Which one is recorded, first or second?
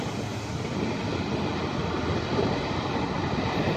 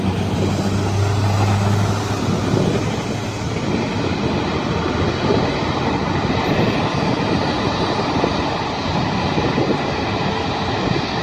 second